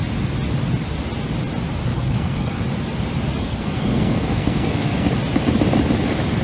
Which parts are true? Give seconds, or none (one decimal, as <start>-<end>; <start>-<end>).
0.0-1.9; 2.6-3.4; 5.1-6.4